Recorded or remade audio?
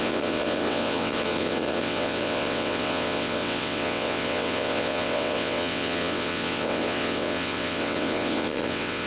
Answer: remade